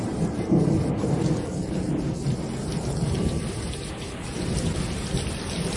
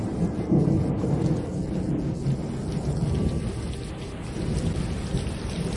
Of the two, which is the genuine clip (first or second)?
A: second